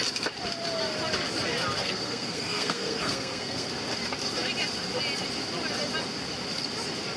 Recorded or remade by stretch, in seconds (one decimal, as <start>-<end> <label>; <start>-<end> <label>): 0.0-1.8 recorded; 1.8-3.7 remade; 3.7-7.2 recorded